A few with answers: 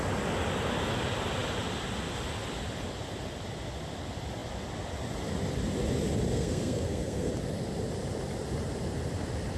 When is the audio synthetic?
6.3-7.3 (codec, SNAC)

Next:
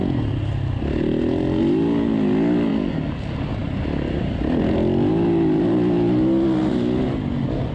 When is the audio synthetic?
none

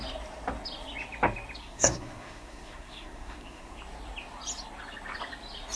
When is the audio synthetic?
1.6-3.8 (codec, SNAC)

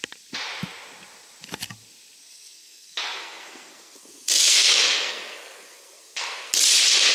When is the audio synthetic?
2.2-6.5 (codec, SNAC)

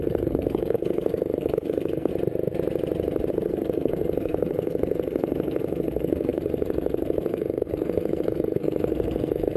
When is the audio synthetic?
0.0-2.1 (codec, SNAC); 3.3-9.6